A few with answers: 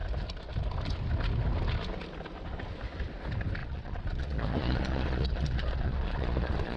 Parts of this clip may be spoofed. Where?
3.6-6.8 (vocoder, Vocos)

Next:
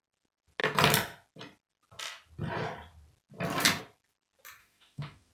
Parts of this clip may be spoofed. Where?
4.6-5.3 (autoencoder, DAC-VAE)